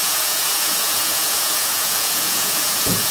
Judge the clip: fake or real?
fake